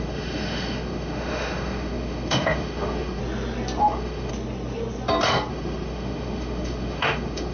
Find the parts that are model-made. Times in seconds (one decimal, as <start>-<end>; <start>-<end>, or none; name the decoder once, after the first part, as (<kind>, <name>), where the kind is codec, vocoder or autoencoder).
0.0-3.2 (autoencoder, DAC-VAE); 3.8-4.3; 5.5-7.5